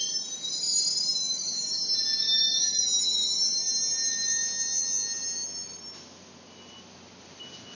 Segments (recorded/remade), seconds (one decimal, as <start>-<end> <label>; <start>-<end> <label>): 0.0-7.7 recorded